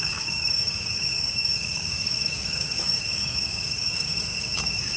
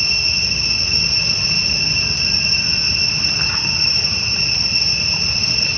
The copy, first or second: first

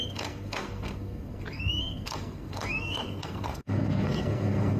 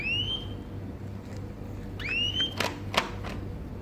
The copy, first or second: first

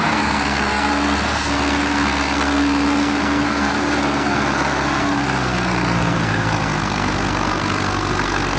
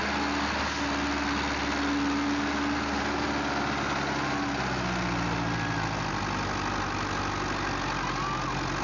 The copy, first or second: first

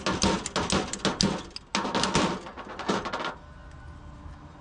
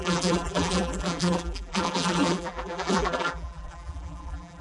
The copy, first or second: second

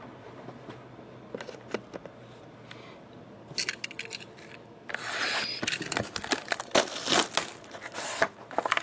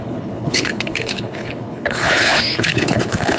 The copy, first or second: second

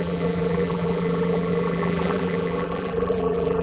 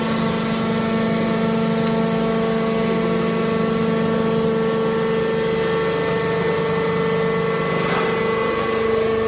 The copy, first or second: first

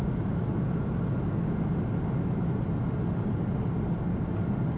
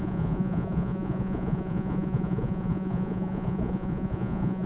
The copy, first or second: second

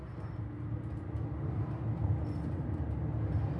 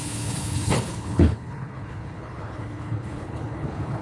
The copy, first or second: second